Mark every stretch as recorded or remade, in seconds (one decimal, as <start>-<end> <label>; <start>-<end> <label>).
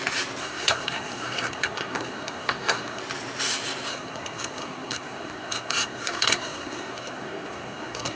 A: 0.0-0.4 recorded; 0.4-3.0 remade; 3.0-3.9 recorded; 3.9-8.2 remade